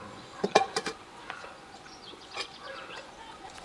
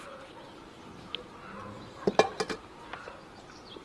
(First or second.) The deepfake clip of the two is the first